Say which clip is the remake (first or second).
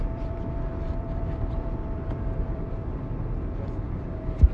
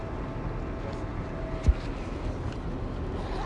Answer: first